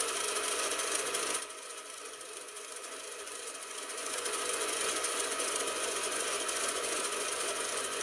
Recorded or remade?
remade